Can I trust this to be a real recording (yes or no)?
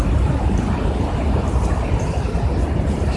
yes